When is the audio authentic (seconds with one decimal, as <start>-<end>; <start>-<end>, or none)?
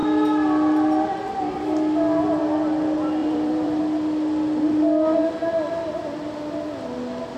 0.0-3.2; 3.8-7.4